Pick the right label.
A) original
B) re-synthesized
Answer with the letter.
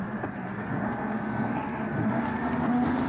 A